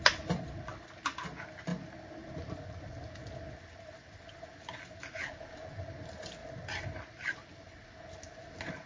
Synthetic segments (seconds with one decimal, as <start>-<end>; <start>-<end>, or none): none